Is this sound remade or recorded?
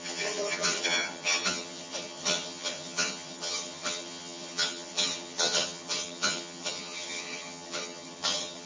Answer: remade